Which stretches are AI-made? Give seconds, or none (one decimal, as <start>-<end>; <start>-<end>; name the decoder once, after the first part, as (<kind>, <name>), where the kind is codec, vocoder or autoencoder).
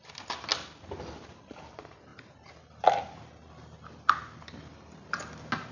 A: none